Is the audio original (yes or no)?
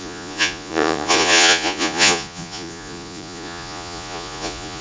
no